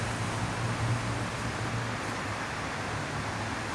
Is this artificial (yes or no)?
no